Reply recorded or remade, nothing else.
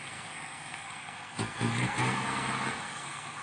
remade